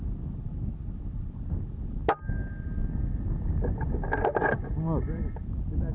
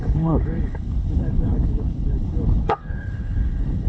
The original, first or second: first